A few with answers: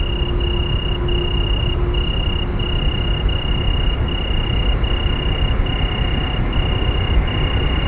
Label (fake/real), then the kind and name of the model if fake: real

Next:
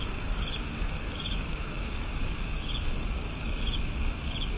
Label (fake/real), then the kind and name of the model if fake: fake, codec, DAC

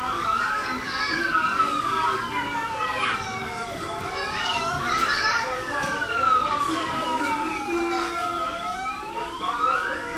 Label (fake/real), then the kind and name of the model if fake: fake, codec, DAC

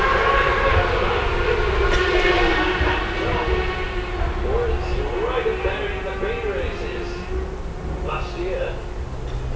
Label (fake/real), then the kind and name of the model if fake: real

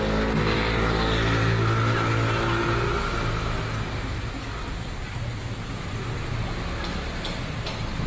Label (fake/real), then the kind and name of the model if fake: real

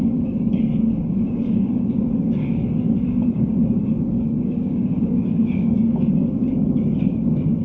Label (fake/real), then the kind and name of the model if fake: fake, codec, DAC